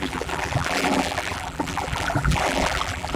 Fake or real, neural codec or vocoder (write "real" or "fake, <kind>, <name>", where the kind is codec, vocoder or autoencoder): fake, vocoder, BigVGAN v2